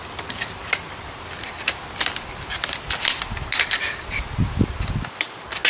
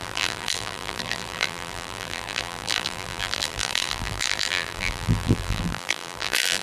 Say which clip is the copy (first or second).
second